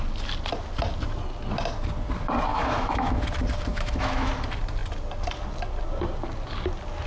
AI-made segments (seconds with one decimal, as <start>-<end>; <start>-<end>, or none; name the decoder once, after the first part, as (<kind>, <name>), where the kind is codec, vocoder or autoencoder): 2.5-3.2 (autoencoder, DAC-VAE); 3.7-4.3